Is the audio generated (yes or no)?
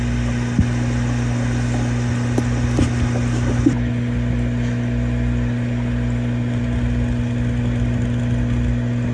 no